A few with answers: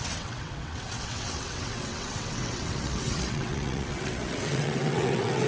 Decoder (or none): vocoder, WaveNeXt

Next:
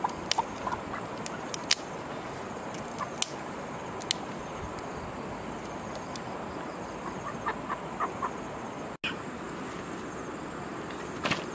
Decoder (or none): none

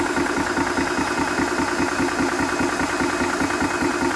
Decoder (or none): none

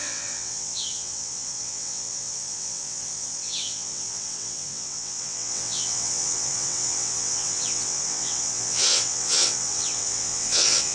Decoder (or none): vocoder, WaveNeXt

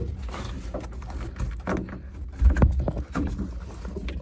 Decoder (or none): none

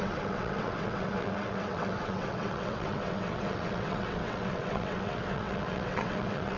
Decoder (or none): vocoder, WaveNeXt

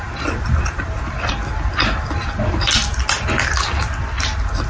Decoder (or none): none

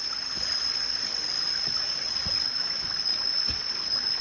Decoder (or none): none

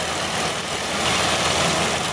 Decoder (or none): none